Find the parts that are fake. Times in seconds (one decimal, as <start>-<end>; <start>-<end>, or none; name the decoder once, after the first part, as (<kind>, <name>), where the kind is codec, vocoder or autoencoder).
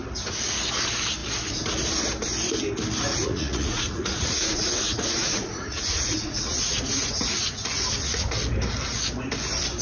3.1-8.3 (vocoder, Vocos)